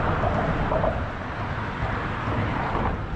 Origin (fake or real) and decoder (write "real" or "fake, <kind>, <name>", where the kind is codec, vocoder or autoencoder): real